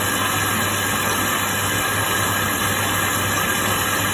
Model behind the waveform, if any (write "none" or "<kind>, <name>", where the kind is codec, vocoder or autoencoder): none